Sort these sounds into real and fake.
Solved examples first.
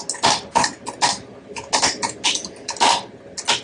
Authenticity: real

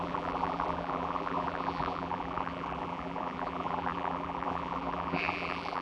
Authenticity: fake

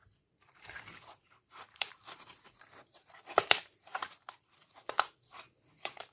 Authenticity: fake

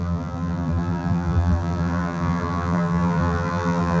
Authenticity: fake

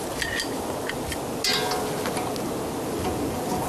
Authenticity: real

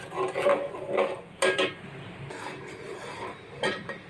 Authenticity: real